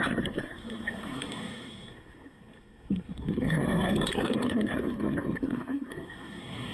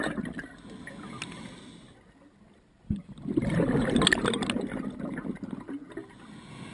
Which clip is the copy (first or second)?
first